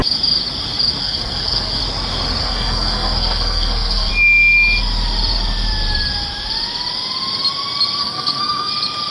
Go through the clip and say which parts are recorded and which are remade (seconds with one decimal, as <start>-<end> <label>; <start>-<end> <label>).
0.0-1.0 recorded; 1.0-1.8 remade; 1.8-2.4 recorded; 2.4-4.1 remade; 4.1-8.0 recorded; 8.0-8.7 remade; 8.7-9.1 recorded